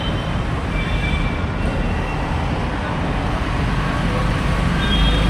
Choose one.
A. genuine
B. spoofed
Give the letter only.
A